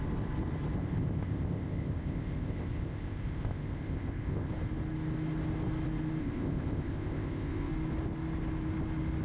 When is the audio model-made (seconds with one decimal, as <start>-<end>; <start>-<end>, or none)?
0.8-4.5; 6.2-7.7